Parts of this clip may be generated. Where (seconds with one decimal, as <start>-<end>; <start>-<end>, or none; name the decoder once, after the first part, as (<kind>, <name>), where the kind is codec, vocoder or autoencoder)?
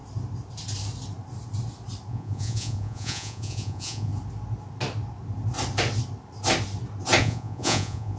2.1-4.1 (vocoder, Vocos); 7.2-8.2